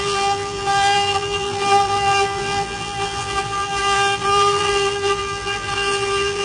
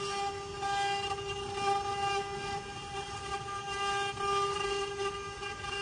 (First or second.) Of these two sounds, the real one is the second